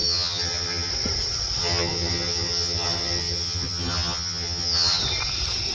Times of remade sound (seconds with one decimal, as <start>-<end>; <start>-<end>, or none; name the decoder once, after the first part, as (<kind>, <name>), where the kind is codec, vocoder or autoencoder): 0.0-0.9 (vocoder, HiFi-GAN); 1.6-5.0

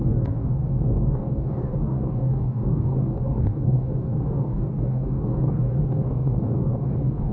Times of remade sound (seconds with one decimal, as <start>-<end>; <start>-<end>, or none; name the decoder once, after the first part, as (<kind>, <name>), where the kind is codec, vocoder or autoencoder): 0.0-7.3 (codec, DAC)

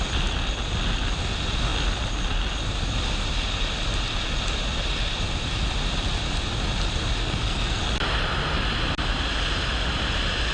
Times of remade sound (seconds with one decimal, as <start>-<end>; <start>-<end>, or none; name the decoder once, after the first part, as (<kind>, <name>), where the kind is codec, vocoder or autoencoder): 7.2-7.8 (codec, SNAC)